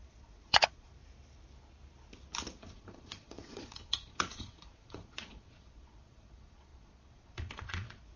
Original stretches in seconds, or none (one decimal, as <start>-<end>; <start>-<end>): 1.0-2.6